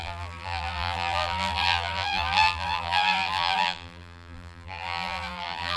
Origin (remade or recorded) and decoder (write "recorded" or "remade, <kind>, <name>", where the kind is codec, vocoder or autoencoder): remade, vocoder, BigVGAN v2